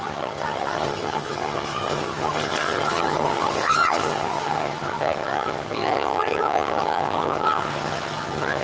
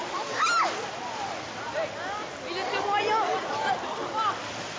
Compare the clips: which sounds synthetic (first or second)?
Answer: first